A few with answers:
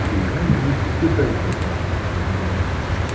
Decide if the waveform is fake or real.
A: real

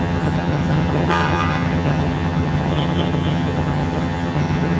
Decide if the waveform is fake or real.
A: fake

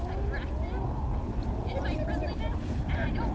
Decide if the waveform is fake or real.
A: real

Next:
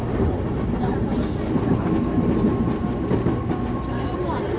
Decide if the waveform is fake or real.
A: real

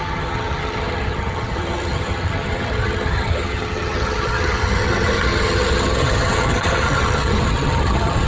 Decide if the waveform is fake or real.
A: fake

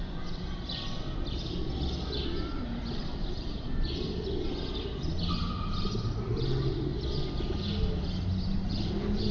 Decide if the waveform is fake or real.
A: real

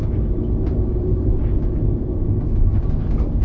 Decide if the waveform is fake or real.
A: real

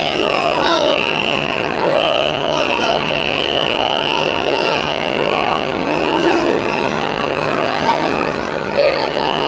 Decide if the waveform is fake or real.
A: fake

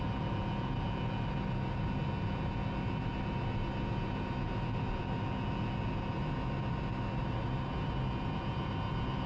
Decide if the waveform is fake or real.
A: real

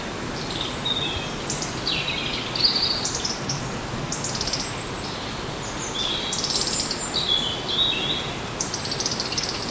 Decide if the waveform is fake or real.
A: real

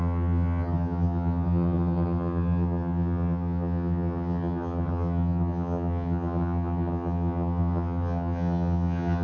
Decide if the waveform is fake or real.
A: fake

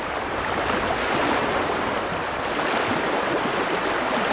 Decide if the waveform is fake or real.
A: real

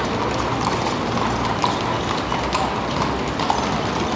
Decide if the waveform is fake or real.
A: real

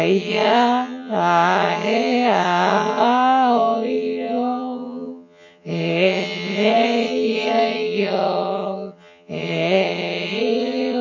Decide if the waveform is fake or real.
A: fake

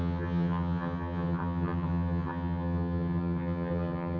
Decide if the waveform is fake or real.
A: fake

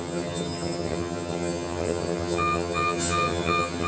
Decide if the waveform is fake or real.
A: fake